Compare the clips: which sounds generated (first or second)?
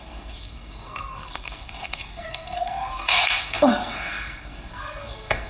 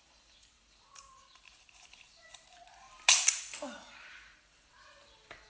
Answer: first